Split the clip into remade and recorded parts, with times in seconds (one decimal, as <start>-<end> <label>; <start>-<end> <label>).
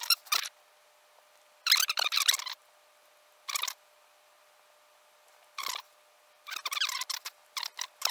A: 0.0-8.1 remade